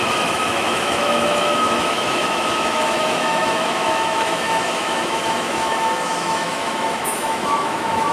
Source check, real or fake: fake